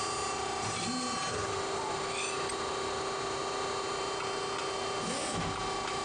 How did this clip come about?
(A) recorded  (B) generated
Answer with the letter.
A